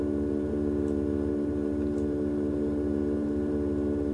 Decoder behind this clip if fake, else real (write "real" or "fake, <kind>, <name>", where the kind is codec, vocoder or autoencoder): fake, vocoder, BigVGAN v2